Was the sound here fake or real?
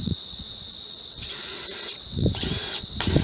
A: fake